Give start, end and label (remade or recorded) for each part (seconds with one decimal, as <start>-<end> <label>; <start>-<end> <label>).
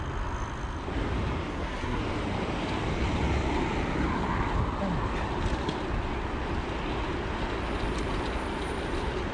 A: 0.0-1.5 recorded; 1.5-2.0 remade; 2.0-9.3 recorded